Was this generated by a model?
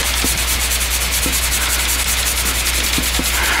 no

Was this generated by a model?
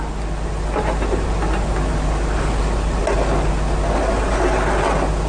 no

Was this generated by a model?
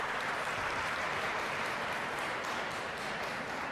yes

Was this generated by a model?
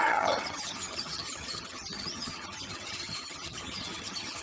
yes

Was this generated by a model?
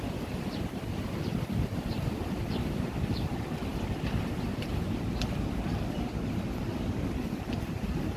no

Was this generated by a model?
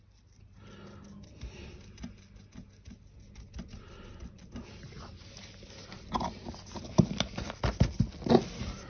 no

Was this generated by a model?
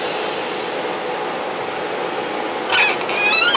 no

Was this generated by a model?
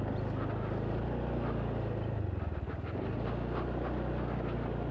no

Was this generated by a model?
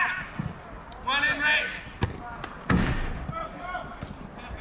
no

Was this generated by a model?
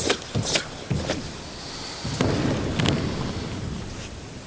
no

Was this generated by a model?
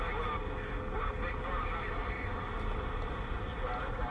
no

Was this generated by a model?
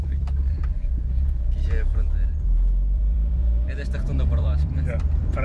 yes